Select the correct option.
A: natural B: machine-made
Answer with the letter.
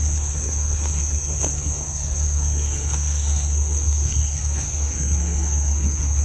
B